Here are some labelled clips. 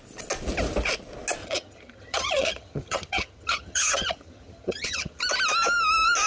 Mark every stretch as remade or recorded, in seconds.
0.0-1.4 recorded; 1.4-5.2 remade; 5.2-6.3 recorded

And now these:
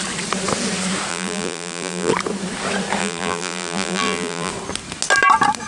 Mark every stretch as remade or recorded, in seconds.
0.0-1.1 recorded; 1.1-2.1 remade; 2.1-3.0 recorded; 3.0-4.5 remade; 4.5-5.7 recorded

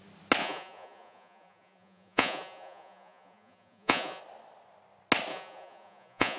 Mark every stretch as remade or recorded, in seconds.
0.0-0.4 recorded; 0.4-4.2 remade; 4.2-5.3 recorded; 5.3-6.4 remade

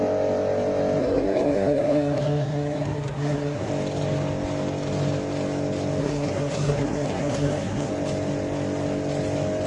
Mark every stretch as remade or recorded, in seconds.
0.0-1.0 recorded; 1.0-3.7 remade; 3.7-6.0 recorded; 6.0-7.9 remade; 7.9-9.7 recorded

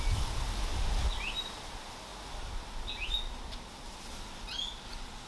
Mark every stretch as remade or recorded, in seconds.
0.0-5.3 recorded